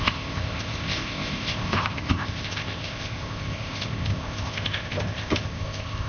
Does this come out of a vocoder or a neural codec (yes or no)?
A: yes